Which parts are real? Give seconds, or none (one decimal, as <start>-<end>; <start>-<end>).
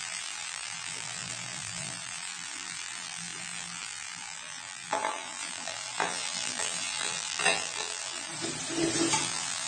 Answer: 8.3-9.2